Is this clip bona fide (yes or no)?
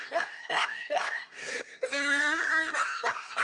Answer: no